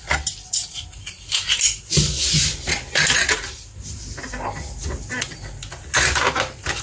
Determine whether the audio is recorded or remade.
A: recorded